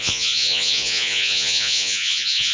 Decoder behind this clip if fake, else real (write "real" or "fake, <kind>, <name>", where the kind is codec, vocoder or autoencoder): fake, vocoder, Vocos